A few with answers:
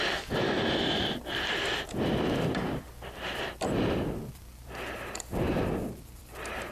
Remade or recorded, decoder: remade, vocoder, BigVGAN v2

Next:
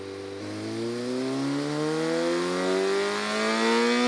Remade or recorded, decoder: recorded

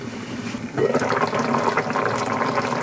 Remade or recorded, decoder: recorded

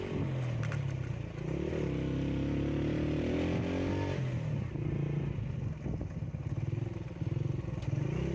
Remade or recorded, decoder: recorded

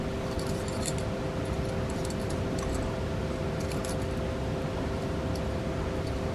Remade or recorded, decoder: recorded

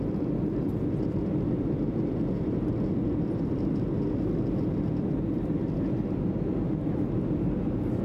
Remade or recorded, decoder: recorded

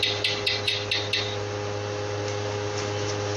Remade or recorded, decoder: recorded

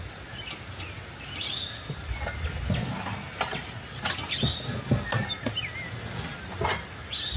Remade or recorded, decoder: recorded